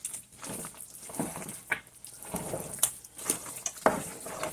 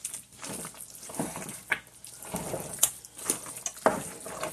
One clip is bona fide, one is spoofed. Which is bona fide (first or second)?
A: second